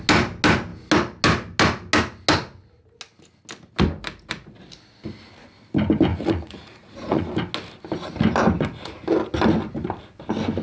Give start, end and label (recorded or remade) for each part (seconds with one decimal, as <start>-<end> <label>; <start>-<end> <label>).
0.0-6.1 recorded; 6.1-7.3 remade; 7.3-10.6 recorded